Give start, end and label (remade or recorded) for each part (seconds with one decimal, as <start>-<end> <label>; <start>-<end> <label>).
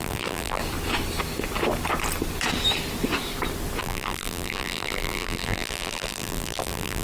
0.0-0.6 remade; 0.6-3.8 recorded; 3.8-7.0 remade